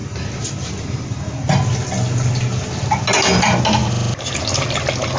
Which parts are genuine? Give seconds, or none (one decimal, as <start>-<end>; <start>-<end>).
0.0-5.2